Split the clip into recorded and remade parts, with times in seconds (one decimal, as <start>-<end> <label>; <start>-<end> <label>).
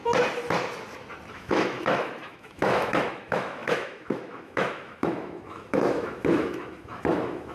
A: 0.0-1.3 recorded; 1.3-7.5 remade